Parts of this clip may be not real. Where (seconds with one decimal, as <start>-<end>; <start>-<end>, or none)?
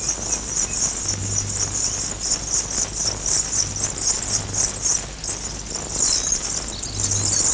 none